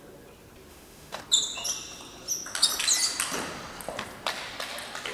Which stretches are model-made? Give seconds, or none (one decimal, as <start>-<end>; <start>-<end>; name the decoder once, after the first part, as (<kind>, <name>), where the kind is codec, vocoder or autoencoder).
0.7-1.2 (autoencoder, DAC-VAE)